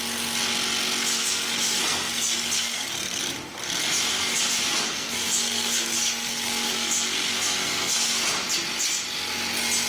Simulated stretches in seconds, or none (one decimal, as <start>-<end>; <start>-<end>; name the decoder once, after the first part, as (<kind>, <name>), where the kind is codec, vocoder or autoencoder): 1.0-3.2 (codec, SNAC); 4.1-8.5